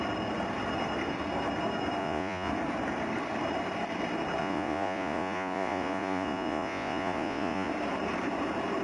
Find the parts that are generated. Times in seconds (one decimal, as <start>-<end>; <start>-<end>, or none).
2.0-2.5; 4.4-7.7